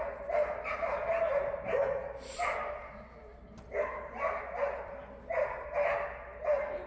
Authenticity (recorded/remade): recorded